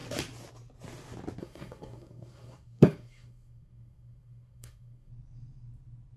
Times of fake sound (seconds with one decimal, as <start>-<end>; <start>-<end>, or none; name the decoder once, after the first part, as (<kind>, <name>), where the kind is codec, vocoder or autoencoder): 1.4-5.1 (codec, SNAC)